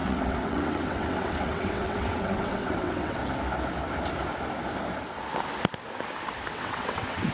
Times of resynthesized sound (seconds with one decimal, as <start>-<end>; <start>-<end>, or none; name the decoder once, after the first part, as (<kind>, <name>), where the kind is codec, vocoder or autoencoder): 0.0-3.2 (vocoder, WaveNeXt); 6.5-7.3